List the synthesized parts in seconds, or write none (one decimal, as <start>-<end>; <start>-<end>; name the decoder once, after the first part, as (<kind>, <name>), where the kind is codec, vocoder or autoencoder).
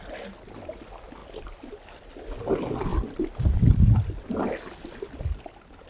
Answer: none